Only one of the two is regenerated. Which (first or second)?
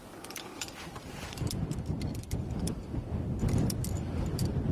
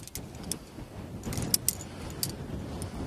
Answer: first